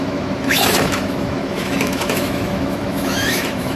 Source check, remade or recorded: remade